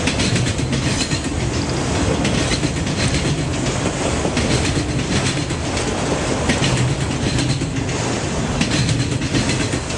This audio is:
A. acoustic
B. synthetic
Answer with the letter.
A